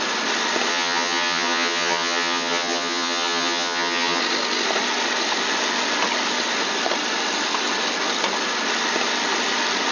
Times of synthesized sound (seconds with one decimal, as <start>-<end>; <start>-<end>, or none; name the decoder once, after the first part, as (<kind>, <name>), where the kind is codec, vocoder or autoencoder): 0.7-4.2 (vocoder, HiFi-GAN)